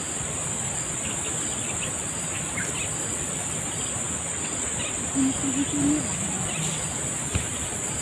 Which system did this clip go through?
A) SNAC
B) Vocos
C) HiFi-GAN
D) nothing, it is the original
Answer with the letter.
D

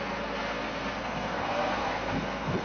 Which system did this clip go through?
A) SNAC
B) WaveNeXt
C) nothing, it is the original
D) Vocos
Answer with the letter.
A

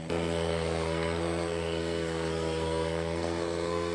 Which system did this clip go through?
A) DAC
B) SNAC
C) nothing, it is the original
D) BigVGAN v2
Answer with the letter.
B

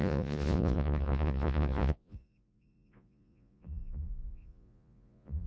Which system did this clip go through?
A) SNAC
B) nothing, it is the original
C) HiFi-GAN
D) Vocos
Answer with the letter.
D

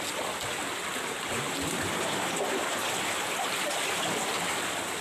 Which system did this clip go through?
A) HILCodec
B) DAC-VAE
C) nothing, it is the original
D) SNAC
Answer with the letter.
C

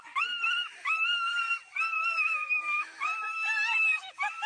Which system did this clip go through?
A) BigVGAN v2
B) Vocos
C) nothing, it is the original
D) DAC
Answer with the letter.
A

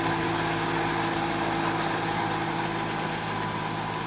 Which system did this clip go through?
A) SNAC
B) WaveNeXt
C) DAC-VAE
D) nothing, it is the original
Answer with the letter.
D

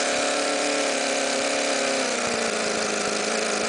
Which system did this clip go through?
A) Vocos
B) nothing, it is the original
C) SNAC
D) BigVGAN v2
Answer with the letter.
B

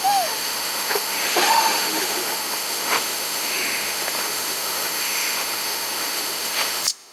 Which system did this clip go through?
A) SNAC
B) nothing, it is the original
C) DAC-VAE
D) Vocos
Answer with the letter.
C